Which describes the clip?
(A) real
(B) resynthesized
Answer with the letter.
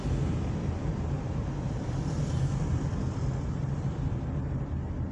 A